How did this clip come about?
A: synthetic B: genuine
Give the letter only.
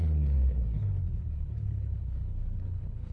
A